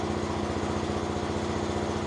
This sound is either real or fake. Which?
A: real